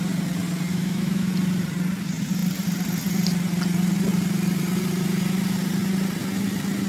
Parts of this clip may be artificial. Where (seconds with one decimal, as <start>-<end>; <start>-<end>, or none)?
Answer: 0.7-1.3